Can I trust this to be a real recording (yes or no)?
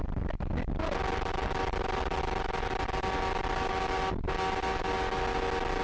yes